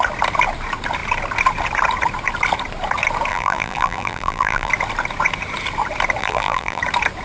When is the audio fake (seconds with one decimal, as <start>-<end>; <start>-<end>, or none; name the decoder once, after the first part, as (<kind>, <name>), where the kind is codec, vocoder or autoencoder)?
3.3-4.7 (vocoder, BigVGAN v2); 6.2-6.8